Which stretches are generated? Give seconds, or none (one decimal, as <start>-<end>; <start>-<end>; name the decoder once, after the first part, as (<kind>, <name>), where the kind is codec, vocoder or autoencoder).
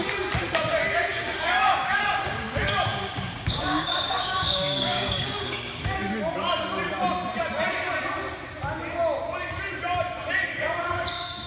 1.1-2.2 (codec, DAC); 2.9-6.1; 10.5-11.5